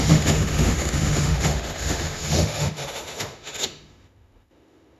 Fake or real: fake